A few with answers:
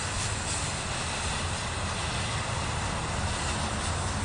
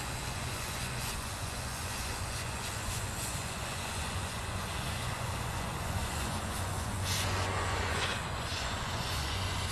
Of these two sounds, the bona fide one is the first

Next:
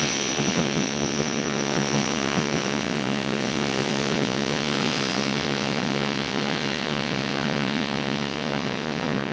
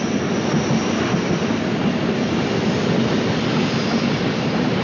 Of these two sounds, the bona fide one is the second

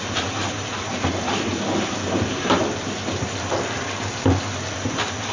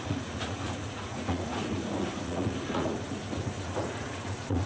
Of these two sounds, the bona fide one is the first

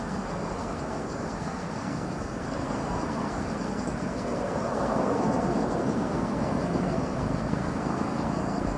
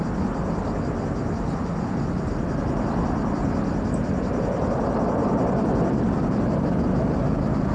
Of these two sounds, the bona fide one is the second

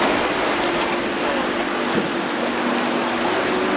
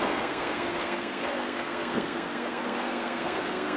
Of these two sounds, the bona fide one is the first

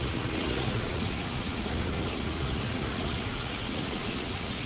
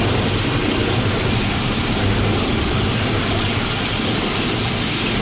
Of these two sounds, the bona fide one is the second